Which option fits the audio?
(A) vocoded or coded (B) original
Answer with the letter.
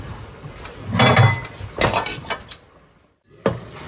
B